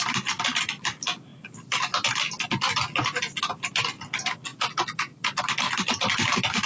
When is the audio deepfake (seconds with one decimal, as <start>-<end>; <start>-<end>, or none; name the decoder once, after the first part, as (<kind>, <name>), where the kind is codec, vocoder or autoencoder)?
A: none